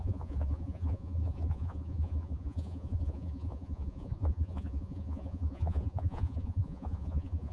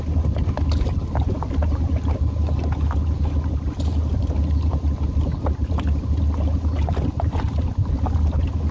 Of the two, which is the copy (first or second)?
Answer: first